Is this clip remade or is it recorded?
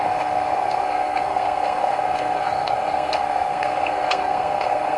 remade